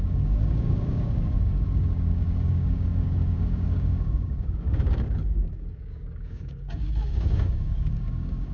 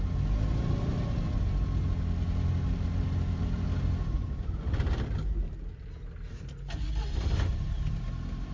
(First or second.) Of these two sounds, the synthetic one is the first